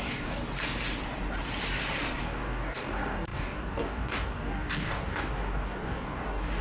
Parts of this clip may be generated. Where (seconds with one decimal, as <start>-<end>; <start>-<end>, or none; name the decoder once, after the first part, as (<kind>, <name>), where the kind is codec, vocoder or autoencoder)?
0.0-0.4 (codec, DAC); 2.2-6.6